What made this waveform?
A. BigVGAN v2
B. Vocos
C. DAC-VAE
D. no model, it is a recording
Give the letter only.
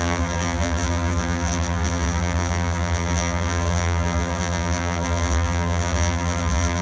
A